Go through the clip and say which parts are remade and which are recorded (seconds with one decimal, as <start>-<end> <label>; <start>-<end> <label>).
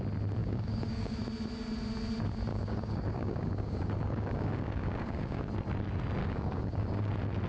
0.0-0.4 recorded; 0.4-1.2 remade; 1.2-2.5 recorded; 2.5-5.5 remade; 5.5-6.2 recorded; 6.2-7.1 remade; 7.1-7.5 recorded